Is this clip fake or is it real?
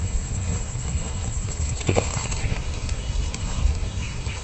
fake